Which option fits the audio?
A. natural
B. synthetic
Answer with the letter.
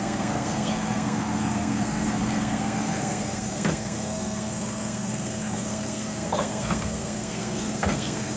B